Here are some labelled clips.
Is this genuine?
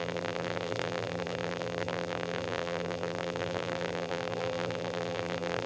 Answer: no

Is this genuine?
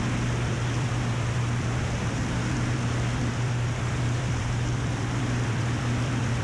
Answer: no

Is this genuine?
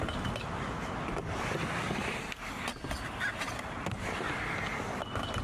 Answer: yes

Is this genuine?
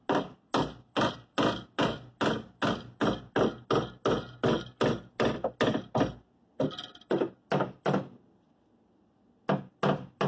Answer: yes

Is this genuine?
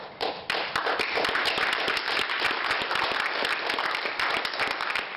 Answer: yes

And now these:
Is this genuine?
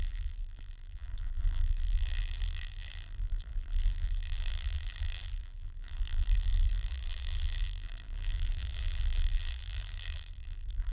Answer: no